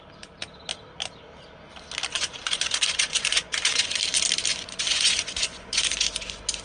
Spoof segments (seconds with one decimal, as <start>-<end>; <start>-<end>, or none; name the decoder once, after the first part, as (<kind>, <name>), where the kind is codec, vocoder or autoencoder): 2.1-4.0 (vocoder, Vocos); 4.5-6.6